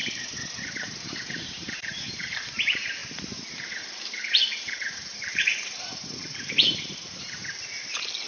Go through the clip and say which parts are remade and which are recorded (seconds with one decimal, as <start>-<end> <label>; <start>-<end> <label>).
0.0-3.0 remade; 3.0-3.5 recorded; 3.5-7.4 remade; 7.4-8.3 recorded